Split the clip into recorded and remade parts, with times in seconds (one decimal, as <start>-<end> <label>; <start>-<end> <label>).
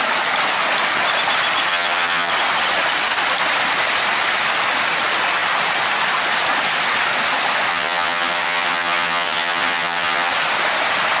0.0-1.7 recorded; 1.7-2.3 remade; 2.3-7.7 recorded; 7.7-10.3 remade; 10.3-11.2 recorded